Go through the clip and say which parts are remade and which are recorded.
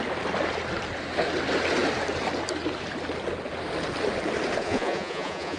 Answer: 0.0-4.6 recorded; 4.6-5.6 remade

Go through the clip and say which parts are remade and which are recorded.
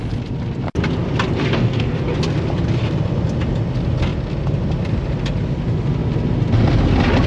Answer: 0.0-1.5 recorded; 1.5-2.0 remade; 2.0-7.3 recorded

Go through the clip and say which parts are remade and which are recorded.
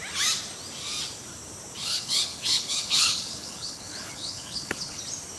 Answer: 0.0-1.8 recorded; 1.8-5.0 remade; 5.0-5.4 recorded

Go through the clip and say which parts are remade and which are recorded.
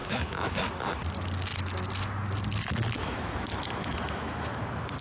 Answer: 0.0-0.5 remade; 0.5-3.0 recorded; 3.0-4.6 remade; 4.6-5.0 recorded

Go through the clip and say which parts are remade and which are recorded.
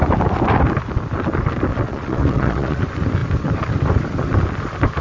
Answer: 0.0-1.7 recorded; 1.7-2.8 remade; 2.8-5.0 recorded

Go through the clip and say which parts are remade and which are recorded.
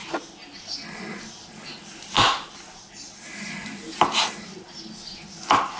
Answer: 0.0-5.8 recorded